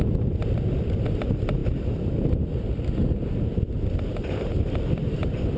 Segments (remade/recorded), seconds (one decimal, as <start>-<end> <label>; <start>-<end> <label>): 0.0-5.6 recorded